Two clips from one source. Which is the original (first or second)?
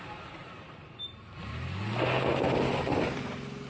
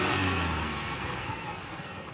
first